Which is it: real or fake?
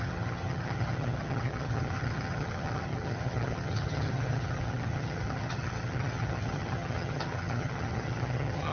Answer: fake